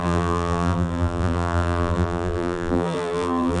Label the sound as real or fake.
fake